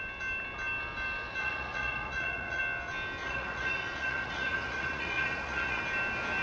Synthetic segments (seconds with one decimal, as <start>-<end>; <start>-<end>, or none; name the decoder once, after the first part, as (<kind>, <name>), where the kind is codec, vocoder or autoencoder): 1.4-2.6 (vocoder, Vocos); 3.2-5.8